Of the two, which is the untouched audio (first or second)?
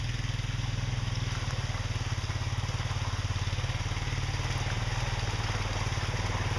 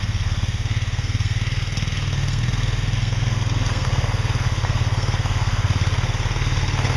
first